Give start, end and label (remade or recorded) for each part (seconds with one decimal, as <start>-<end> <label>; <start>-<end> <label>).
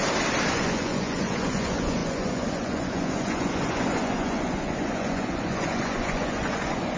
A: 0.0-0.5 recorded; 0.5-7.0 remade